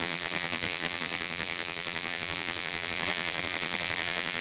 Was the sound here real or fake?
fake